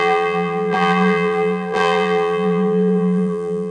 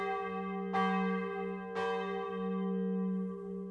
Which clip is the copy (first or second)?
first